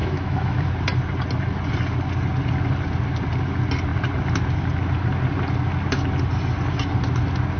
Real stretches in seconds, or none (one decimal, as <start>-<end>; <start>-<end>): 0.7-7.6